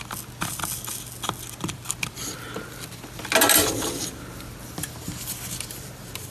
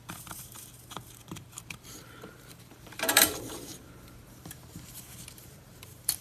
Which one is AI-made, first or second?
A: second